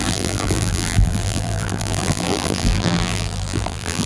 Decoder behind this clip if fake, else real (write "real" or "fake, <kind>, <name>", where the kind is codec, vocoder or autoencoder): fake, vocoder, BigVGAN v2